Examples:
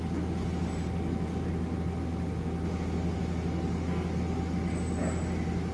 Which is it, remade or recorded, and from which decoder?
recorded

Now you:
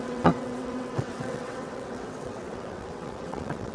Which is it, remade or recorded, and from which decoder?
remade, vocoder, WaveNeXt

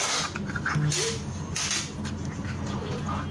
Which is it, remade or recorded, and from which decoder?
recorded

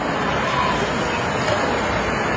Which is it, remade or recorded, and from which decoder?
recorded